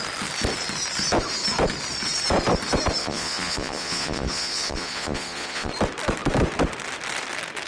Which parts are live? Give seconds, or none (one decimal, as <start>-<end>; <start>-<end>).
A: 0.0-3.0; 5.7-7.7